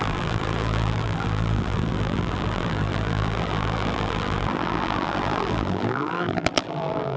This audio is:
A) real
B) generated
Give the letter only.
B